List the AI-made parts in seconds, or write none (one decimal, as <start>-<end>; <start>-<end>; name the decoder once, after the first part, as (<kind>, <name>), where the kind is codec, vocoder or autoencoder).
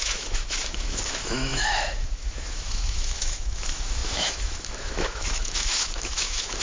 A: 0.0-6.6 (autoencoder, DAC-VAE)